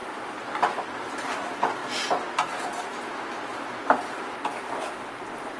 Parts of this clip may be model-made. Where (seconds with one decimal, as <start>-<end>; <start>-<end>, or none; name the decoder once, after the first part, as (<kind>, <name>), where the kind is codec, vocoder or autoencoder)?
none